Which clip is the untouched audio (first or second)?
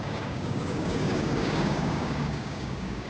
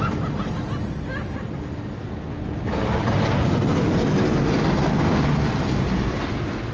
second